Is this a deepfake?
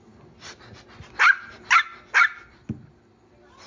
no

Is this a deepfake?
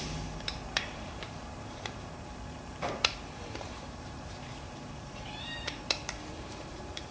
yes